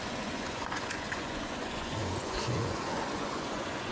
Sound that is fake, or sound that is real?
fake